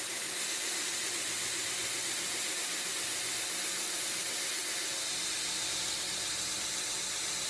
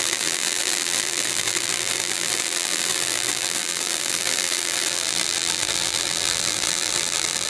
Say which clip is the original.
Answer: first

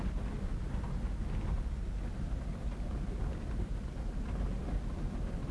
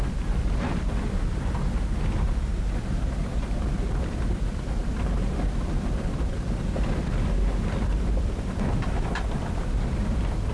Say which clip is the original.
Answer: first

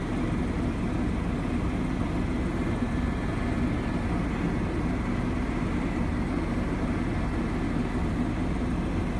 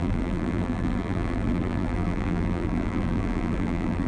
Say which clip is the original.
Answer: first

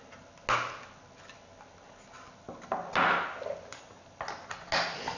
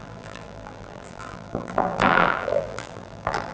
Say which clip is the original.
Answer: first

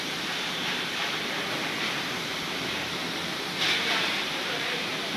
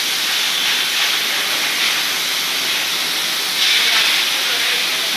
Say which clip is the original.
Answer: second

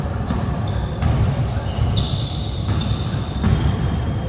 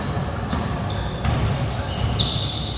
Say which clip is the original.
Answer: second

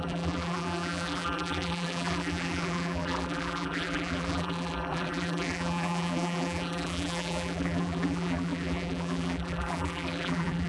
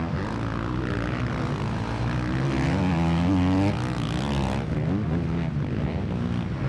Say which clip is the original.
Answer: second